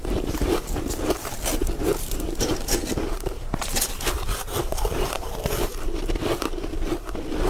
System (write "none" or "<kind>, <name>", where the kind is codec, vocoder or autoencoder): vocoder, BigVGAN v2